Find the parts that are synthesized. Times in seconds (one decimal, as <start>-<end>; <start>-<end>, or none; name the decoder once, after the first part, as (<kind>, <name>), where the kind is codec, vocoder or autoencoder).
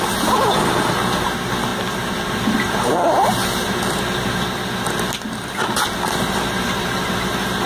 none